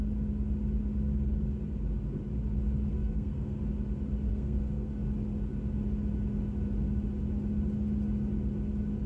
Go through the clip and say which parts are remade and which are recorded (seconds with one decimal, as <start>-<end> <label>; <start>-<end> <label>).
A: 0.0-2.9 recorded; 2.9-3.6 remade; 3.6-4.3 recorded; 4.3-4.9 remade; 4.9-9.1 recorded